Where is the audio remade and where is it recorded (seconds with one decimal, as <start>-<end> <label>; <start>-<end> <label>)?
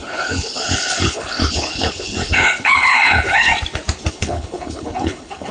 0.0-3.5 remade; 3.5-4.1 recorded; 4.1-5.5 remade